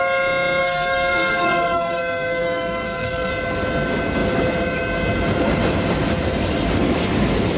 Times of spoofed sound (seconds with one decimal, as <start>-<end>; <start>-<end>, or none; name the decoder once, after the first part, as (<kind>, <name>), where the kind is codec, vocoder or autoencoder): 0.6-3.3 (codec, SNAC)

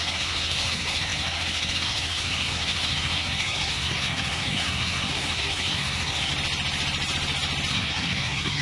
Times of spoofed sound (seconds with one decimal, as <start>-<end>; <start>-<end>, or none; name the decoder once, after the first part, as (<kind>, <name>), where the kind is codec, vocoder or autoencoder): 0.0-6.3 (codec, SNAC); 7.7-8.6

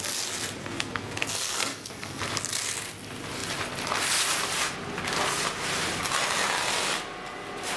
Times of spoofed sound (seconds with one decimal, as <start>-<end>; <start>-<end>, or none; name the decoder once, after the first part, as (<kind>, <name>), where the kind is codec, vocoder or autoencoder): 0.6-2.2 (codec, SNAC)